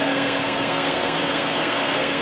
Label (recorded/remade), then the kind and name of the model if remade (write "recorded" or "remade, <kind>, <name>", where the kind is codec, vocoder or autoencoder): remade, codec, SNAC